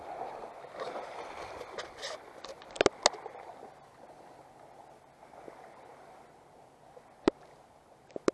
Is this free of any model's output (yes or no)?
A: yes